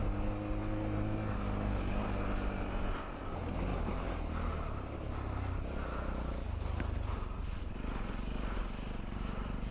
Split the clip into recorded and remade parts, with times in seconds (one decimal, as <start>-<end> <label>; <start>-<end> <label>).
0.0-9.7 recorded